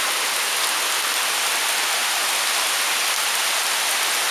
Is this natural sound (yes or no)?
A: yes